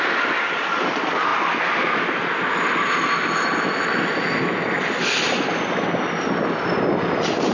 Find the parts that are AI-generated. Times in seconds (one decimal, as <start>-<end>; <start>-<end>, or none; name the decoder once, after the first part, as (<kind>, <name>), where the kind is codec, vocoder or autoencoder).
none